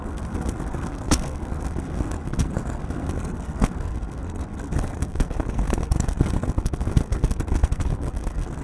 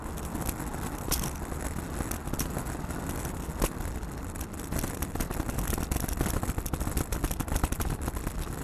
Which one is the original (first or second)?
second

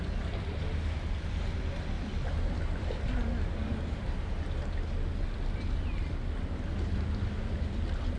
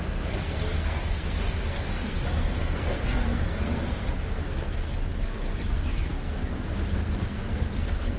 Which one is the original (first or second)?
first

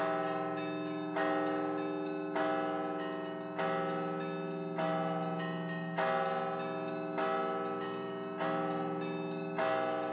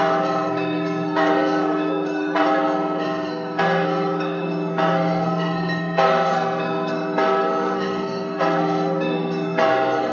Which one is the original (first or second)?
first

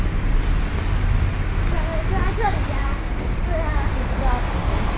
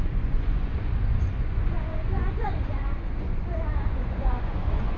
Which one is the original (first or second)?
first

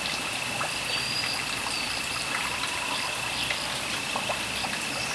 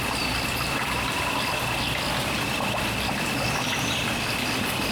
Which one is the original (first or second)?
second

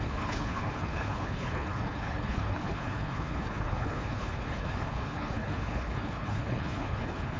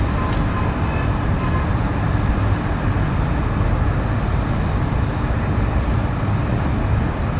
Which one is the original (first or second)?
second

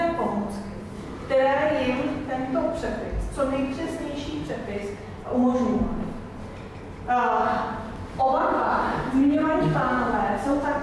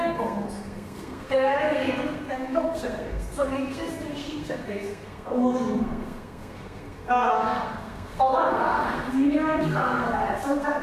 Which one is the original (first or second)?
first